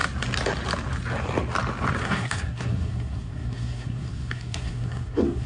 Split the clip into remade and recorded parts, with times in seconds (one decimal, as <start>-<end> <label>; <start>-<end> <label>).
0.0-2.0 recorded; 2.0-5.5 remade